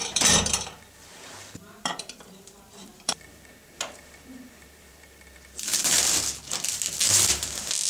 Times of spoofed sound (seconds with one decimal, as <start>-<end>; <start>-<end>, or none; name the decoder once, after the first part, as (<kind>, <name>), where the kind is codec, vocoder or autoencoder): 0.0-3.5 (vocoder, BigVGAN v2); 4.6-6.0